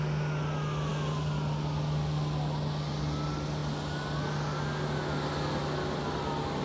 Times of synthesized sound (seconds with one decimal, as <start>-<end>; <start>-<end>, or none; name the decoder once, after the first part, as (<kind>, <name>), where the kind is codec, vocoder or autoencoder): none